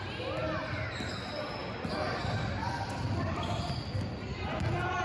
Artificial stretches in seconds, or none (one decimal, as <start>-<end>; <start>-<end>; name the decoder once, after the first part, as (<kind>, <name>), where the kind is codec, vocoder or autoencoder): 1.6-4.6 (vocoder, BigVGAN v2)